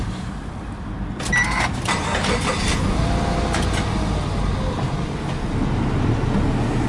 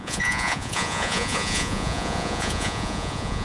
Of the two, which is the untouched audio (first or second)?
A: first